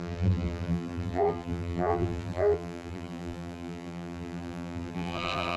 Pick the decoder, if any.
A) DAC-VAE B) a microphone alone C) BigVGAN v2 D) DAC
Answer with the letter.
C